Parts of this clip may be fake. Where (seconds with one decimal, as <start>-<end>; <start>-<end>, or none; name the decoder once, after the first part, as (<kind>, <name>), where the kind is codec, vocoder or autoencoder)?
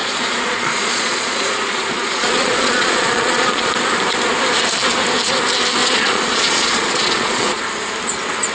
0.0-3.7 (vocoder, Vocos); 5.8-7.6